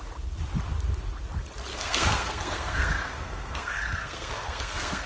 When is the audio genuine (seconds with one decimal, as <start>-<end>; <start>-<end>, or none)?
0.0-1.7